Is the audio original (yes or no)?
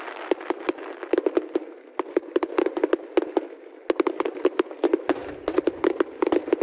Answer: yes